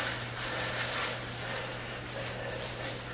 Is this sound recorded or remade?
recorded